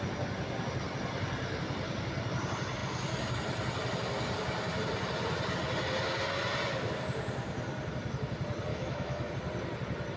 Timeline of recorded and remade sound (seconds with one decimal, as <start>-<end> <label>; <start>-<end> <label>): 0.0-8.7 recorded; 8.7-9.3 remade; 9.3-10.2 recorded